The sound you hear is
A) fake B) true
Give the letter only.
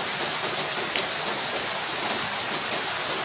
B